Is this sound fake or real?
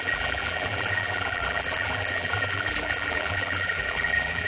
fake